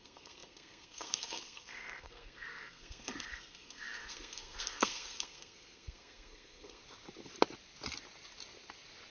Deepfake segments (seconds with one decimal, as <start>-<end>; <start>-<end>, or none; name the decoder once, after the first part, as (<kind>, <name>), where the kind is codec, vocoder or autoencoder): 0.0-6.8 (codec, SNAC)